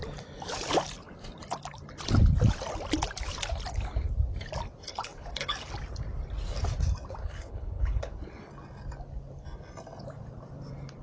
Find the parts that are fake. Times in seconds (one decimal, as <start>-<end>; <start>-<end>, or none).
4.9-5.7; 7.2-8.1